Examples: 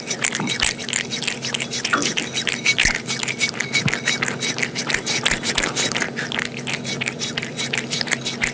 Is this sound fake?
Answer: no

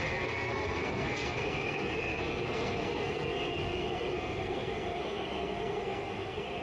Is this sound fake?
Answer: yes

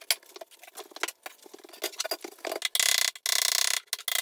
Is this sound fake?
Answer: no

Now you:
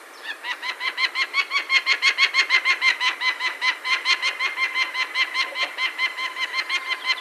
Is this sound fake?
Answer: no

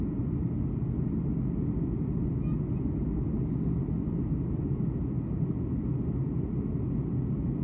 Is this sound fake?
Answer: no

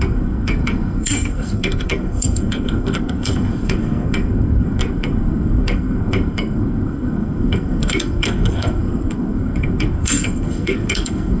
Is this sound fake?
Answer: yes